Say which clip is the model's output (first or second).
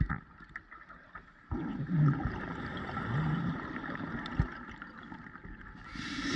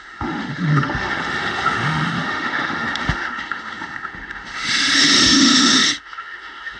second